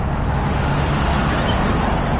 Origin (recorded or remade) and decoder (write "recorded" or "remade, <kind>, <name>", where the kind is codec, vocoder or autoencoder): recorded